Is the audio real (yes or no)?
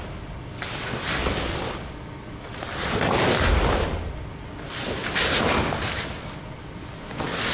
yes